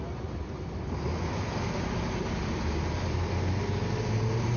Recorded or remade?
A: recorded